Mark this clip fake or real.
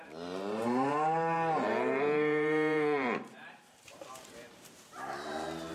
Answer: fake